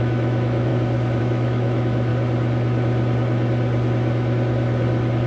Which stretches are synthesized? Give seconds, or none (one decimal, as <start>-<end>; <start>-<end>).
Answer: 0.0-0.7; 1.2-2.1